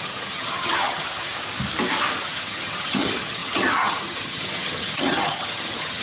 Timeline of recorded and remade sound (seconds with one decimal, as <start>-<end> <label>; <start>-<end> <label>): 0.0-1.3 remade; 1.3-2.2 recorded; 2.2-6.0 remade